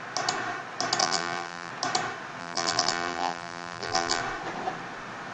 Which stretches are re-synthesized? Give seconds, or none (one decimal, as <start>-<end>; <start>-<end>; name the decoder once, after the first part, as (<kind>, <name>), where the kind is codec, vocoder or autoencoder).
1.0-1.7 (vocoder, BigVGAN v2); 2.4-4.2